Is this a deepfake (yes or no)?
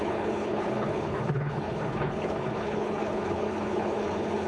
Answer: yes